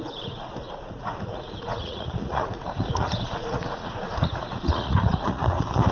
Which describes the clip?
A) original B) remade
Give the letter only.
B